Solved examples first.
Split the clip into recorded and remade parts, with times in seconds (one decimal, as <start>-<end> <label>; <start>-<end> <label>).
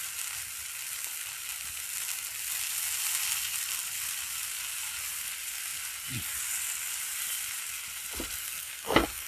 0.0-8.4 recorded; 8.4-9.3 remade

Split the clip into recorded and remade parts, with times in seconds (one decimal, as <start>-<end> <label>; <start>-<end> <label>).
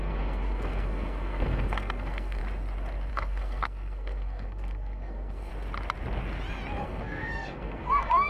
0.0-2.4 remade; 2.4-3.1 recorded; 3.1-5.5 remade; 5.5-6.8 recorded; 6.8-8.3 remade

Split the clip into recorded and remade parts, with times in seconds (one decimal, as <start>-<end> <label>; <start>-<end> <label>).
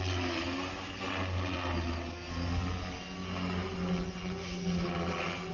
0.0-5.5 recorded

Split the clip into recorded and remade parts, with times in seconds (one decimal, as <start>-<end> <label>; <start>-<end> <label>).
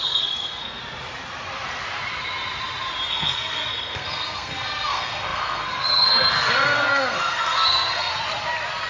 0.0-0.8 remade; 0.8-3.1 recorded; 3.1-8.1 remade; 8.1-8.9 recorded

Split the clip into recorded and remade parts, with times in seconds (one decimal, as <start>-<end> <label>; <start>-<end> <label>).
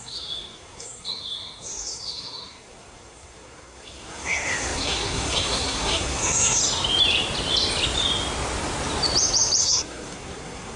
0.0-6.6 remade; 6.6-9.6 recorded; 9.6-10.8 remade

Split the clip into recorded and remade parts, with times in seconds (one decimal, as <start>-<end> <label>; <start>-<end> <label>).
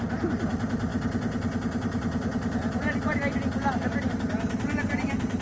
0.0-5.4 recorded